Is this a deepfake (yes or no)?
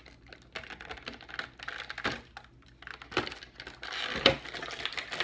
no